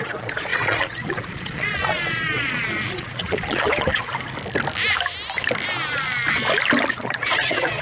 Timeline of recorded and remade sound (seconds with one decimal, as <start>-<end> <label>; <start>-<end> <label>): 0.0-4.1 remade; 4.1-6.9 recorded; 6.9-7.8 remade